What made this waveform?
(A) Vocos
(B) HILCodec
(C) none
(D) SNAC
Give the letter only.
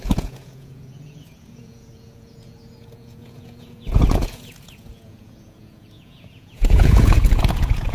A